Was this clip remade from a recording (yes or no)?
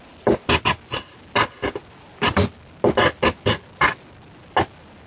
no